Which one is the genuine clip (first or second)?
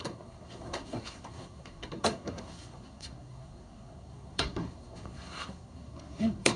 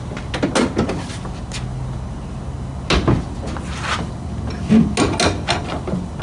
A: second